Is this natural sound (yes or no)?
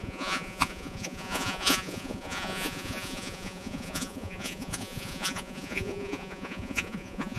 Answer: no